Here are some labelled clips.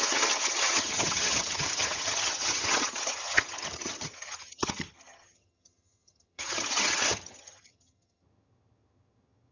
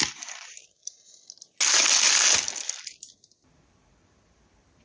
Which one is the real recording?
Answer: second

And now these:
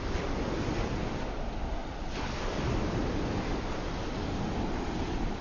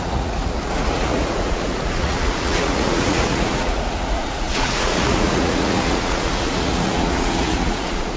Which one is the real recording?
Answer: first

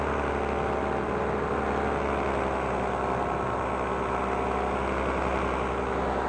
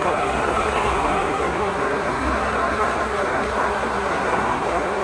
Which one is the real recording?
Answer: first